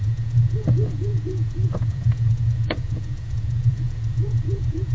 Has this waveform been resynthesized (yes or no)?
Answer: yes